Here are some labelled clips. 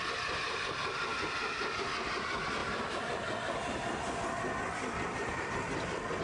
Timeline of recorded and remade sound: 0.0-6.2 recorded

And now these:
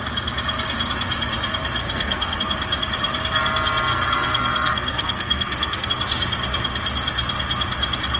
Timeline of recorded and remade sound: 0.0-1.8 recorded; 1.8-2.4 remade; 2.4-3.9 recorded; 3.9-5.9 remade; 5.9-8.2 recorded

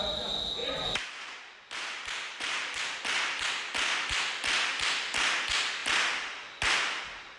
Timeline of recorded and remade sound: 0.0-0.6 recorded; 0.6-3.0 remade; 3.0-4.7 recorded; 4.7-5.3 remade; 5.3-7.4 recorded